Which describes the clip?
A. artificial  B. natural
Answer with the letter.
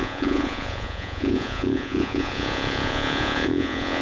A